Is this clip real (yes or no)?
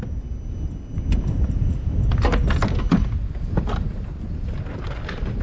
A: yes